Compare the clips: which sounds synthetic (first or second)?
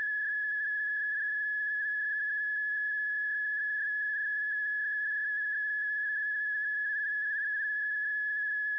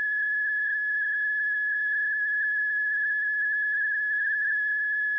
second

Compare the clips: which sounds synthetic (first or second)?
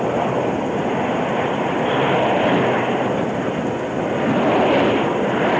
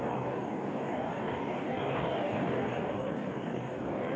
second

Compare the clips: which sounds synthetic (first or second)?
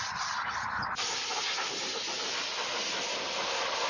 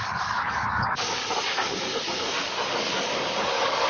second